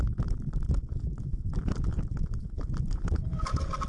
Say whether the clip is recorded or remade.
recorded